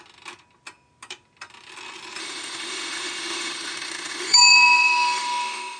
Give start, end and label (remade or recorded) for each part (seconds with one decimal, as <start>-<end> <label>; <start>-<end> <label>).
0.0-2.2 recorded; 2.2-5.8 remade